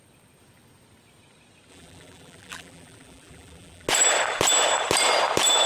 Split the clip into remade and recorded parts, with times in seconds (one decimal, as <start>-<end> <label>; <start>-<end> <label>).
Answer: 0.0-1.7 recorded; 1.7-3.9 remade; 3.9-5.7 recorded